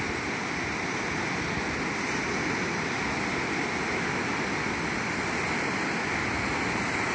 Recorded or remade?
recorded